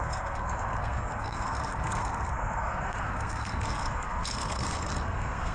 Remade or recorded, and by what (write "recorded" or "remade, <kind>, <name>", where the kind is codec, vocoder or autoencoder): remade, codec, SNAC